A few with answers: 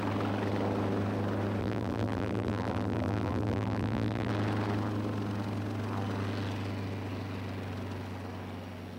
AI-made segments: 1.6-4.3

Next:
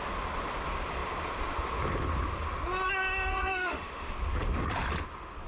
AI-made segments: 3.3-4.1